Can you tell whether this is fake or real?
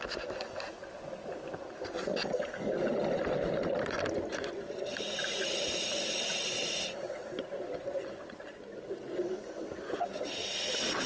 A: real